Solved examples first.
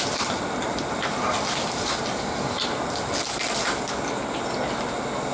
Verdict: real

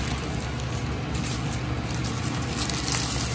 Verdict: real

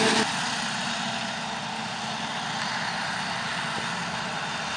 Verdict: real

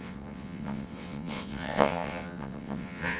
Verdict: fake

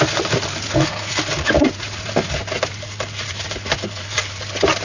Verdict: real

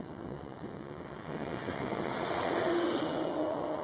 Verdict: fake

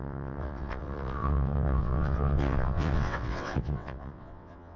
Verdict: fake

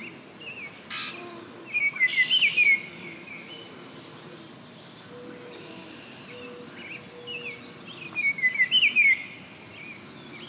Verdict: real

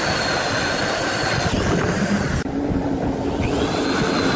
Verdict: real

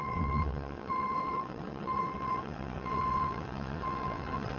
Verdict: fake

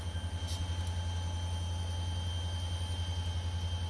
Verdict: real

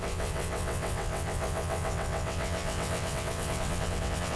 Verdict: fake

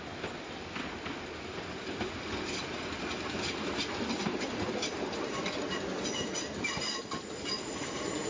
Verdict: real